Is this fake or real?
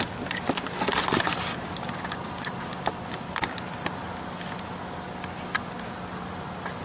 real